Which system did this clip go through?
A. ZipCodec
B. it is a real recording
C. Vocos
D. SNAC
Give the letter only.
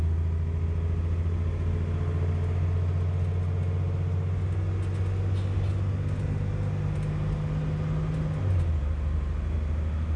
B